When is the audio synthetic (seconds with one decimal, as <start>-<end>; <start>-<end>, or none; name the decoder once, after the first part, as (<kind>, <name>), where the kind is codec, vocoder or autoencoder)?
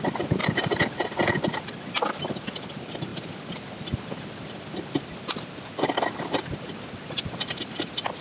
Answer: none